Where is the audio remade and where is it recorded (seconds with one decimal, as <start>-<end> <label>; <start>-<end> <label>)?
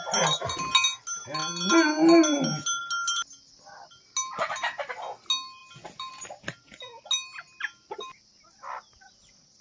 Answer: 0.0-9.6 recorded